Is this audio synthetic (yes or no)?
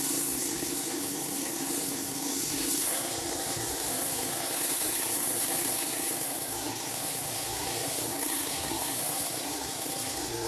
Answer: yes